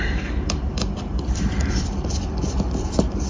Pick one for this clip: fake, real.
fake